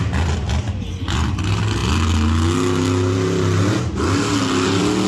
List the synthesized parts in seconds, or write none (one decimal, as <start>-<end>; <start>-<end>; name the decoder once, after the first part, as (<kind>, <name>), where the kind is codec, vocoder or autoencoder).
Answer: none